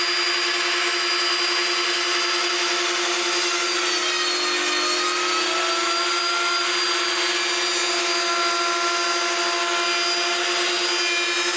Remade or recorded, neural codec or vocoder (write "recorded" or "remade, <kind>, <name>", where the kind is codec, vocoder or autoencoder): recorded